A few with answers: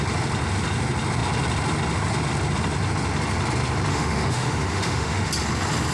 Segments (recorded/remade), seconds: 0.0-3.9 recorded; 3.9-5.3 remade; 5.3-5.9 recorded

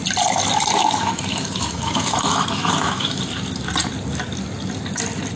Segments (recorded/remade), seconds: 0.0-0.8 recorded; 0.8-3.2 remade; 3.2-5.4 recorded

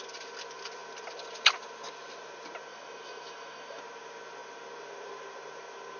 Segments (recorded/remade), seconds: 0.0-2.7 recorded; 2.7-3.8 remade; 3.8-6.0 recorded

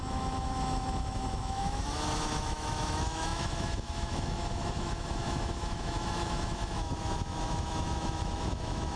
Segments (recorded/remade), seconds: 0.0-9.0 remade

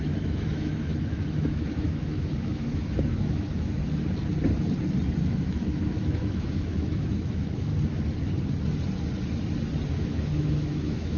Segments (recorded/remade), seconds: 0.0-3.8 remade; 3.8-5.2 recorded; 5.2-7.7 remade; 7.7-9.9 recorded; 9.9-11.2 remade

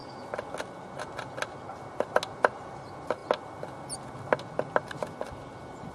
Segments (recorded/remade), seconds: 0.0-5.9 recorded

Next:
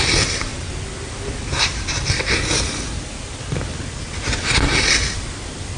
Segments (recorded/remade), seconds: 0.0-5.8 recorded

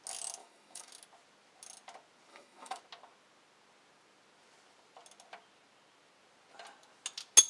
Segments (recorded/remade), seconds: 0.0-0.4 recorded; 0.4-0.9 remade; 0.9-2.3 recorded; 2.3-2.8 remade; 2.8-7.5 recorded